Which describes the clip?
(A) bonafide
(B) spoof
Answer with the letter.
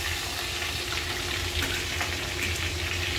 A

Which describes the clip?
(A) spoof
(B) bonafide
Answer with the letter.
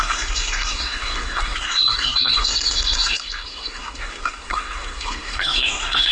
A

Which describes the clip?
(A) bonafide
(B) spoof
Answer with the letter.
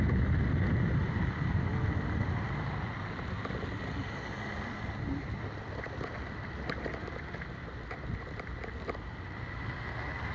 A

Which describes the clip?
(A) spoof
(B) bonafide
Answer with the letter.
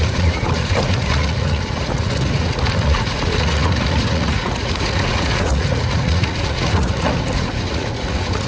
A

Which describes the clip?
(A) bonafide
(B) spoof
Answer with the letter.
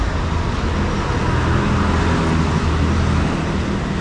A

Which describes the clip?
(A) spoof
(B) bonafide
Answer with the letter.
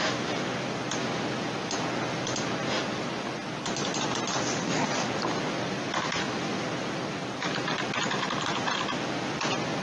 B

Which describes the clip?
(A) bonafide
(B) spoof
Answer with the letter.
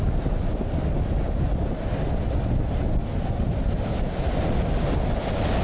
A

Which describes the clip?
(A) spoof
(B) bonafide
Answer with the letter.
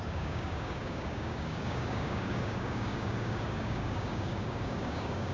A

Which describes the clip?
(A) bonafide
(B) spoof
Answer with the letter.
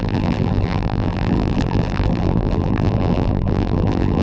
B